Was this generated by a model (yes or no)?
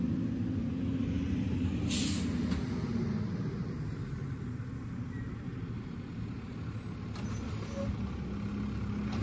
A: no